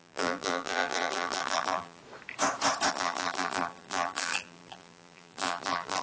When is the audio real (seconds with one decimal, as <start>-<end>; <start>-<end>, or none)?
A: 2.0-2.9